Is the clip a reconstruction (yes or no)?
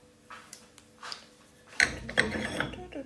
no